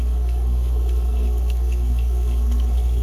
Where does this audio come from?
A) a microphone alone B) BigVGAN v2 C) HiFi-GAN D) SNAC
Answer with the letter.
D